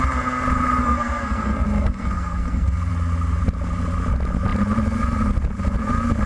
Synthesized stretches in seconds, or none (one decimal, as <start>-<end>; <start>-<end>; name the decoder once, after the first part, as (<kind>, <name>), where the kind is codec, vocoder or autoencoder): 0.8-2.9 (codec, SNAC)